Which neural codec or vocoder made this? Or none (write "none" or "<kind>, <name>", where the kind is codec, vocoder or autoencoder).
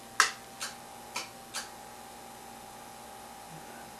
none